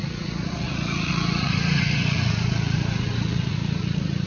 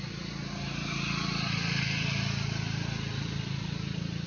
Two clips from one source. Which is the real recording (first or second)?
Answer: second